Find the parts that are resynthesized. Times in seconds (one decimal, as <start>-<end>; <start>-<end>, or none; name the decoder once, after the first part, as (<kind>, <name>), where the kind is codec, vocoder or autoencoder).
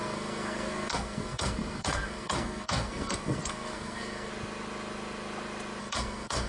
0.0-4.3 (codec, SNAC); 5.8-6.5